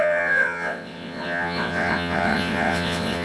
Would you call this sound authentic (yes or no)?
no